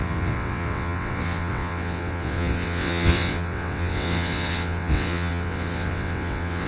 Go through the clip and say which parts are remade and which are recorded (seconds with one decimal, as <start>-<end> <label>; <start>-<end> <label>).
0.0-6.7 remade